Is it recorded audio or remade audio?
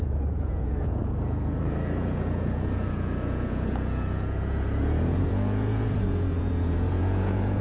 remade